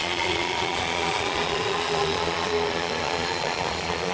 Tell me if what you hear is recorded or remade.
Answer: remade